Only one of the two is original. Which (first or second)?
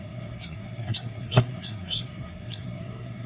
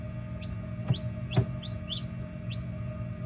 second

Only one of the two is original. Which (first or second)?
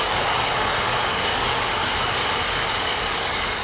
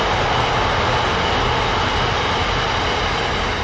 second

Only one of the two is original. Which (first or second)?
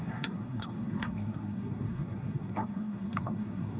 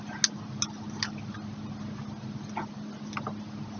second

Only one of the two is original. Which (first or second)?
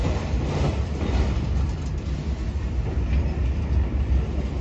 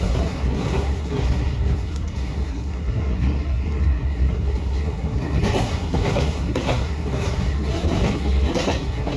first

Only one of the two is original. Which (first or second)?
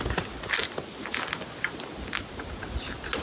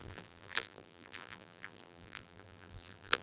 first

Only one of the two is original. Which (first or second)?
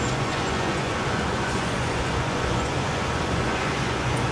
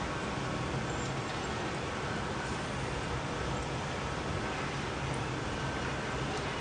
second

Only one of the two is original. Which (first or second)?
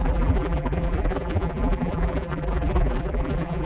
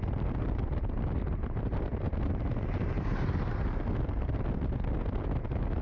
second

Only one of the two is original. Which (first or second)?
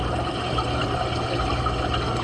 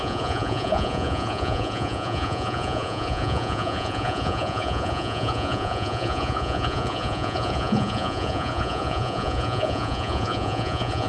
first